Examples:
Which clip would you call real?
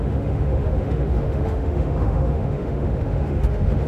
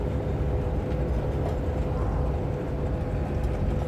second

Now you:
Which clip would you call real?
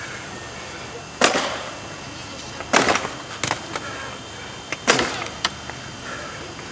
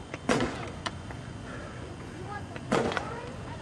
first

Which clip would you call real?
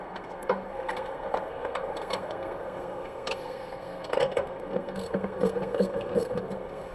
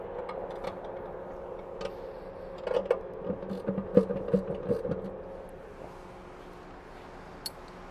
second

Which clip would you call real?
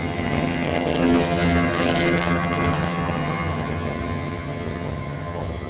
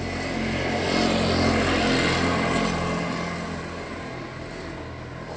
second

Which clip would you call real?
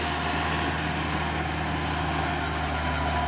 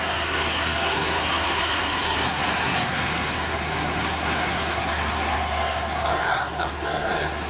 first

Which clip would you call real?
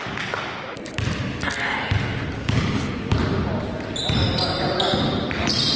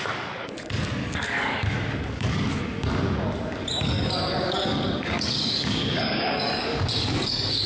first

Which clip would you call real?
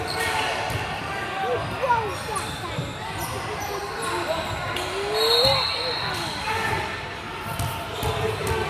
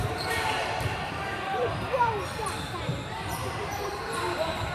first